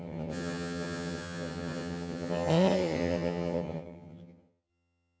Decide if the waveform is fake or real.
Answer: fake